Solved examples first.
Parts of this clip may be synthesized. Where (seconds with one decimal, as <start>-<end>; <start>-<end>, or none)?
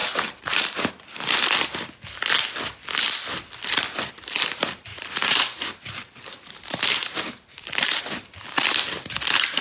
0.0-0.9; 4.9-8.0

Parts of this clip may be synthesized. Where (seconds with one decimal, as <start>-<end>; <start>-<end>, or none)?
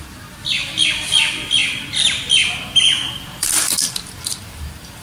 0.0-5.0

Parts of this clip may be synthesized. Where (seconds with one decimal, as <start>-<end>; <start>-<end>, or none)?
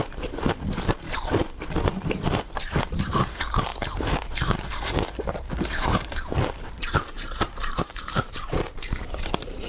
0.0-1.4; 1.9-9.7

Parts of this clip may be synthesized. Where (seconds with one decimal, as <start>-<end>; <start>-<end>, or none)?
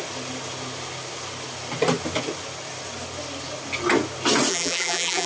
4.5-5.3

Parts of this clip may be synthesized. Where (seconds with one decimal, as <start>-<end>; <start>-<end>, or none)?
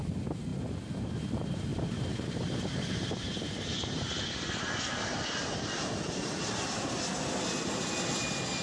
1.7-6.9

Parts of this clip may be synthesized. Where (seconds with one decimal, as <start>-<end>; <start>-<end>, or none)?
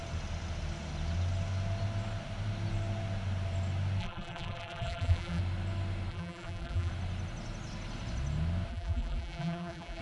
4.0-5.4; 6.1-6.9; 8.7-10.0